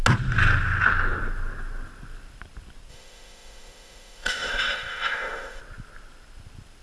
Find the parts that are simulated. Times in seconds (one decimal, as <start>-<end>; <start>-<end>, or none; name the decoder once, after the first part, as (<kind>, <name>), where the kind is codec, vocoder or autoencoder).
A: 2.9-5.6 (autoencoder, DAC-VAE)